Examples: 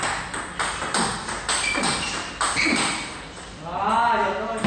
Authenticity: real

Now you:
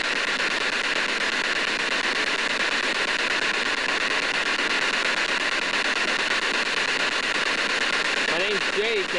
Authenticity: real